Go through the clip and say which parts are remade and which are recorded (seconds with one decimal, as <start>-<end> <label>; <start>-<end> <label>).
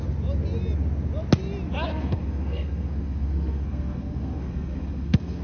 0.0-1.9 recorded; 1.9-5.4 remade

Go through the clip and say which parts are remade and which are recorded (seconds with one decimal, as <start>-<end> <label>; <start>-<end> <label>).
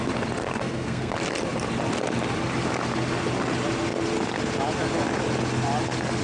0.0-0.4 recorded; 0.4-1.1 remade; 1.1-6.2 recorded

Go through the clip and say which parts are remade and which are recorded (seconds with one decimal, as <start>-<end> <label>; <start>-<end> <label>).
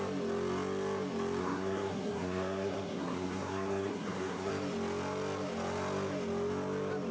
0.0-1.4 recorded; 1.4-4.5 remade; 4.5-7.1 recorded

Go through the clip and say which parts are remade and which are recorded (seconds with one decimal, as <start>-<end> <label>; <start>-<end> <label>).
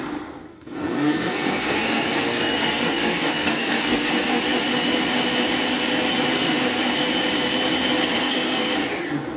0.0-0.5 recorded; 0.5-4.4 remade; 4.4-6.3 recorded; 6.3-6.8 remade; 6.8-8.0 recorded; 8.0-8.7 remade; 8.7-9.4 recorded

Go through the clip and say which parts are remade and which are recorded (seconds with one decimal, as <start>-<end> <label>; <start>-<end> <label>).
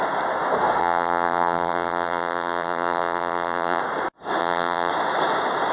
0.0-0.8 recorded; 0.8-3.8 remade; 3.8-4.4 recorded; 4.4-4.9 remade; 4.9-5.7 recorded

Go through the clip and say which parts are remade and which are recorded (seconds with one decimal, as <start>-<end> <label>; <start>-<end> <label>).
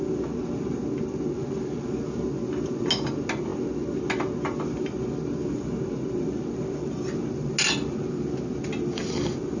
0.0-9.6 recorded